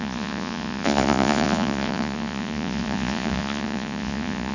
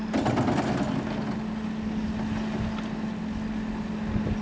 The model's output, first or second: first